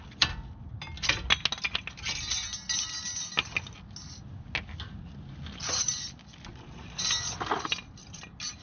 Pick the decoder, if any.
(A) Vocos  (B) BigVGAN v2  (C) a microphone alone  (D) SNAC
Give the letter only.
C